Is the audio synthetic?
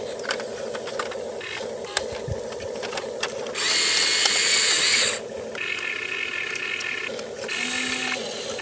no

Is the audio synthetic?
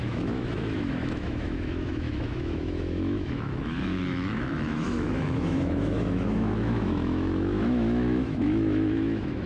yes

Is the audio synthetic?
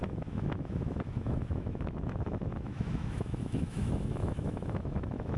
yes